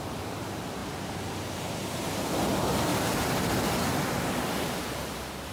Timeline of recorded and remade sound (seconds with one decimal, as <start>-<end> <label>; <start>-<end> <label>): 0.0-2.9 remade; 2.9-4.1 recorded; 4.1-5.5 remade